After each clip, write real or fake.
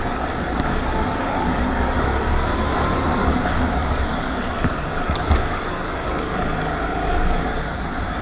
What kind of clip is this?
fake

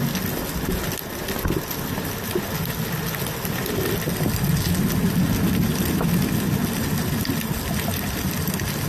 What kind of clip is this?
real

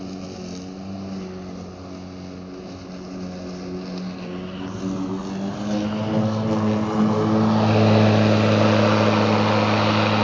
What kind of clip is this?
real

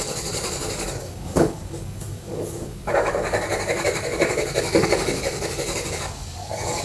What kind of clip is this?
fake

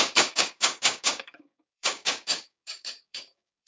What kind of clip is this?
fake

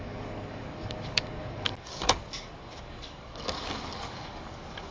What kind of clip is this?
fake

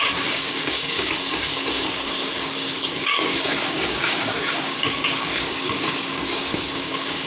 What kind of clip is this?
fake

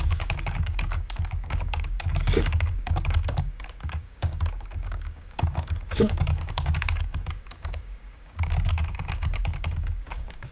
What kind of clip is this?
fake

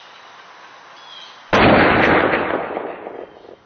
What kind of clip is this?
real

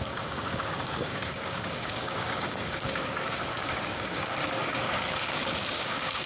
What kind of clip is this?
fake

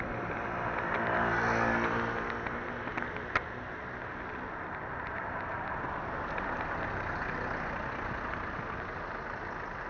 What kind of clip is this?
real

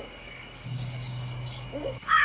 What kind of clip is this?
fake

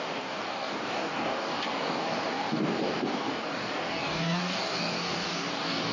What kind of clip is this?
fake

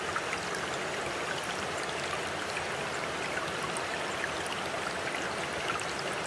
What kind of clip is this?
real